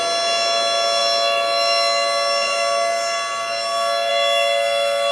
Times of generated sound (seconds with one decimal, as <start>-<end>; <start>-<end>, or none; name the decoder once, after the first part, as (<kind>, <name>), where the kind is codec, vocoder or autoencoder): none